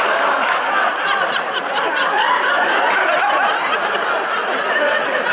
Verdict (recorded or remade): recorded